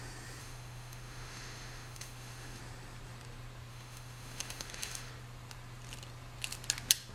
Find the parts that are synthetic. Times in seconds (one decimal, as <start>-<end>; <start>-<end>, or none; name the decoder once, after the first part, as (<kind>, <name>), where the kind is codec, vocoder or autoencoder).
0.4-2.6 (autoencoder, DAC-VAE); 3.7-5.1